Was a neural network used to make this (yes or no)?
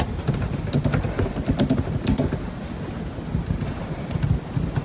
no